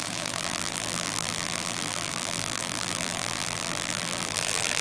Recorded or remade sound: remade